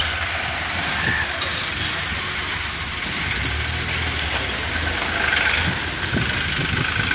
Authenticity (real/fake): real